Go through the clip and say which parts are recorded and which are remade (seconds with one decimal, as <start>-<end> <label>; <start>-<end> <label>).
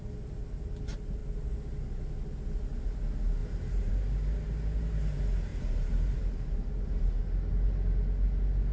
0.0-3.4 recorded; 3.4-3.9 remade; 3.9-5.5 recorded; 5.5-7.2 remade; 7.2-8.7 recorded